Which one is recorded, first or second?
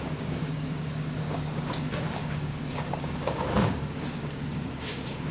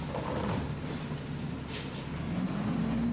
second